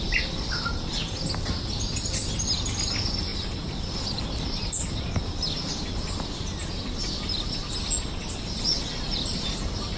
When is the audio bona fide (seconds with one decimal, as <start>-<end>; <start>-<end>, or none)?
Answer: 0.0-10.0